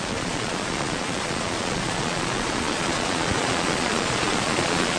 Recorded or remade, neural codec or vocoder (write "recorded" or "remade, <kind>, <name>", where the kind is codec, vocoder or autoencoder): remade, vocoder, Vocos